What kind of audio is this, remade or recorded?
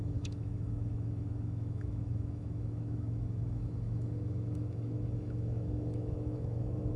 remade